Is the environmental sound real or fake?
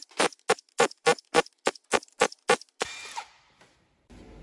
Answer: real